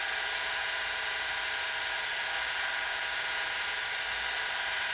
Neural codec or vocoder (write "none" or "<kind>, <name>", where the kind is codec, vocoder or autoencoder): none